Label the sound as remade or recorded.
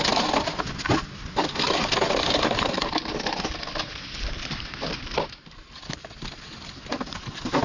recorded